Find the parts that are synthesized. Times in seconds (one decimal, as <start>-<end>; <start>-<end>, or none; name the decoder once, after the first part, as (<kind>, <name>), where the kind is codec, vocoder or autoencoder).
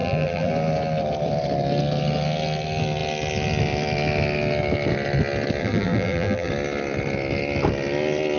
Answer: 0.0-0.5 (vocoder, BigVGAN v2); 5.6-6.5